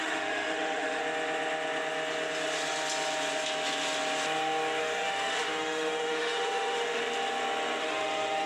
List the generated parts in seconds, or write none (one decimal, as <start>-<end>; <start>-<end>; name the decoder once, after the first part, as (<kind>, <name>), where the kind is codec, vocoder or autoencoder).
0.0-1.0 (autoencoder, DAC-VAE); 4.8-7.0; 7.8-8.5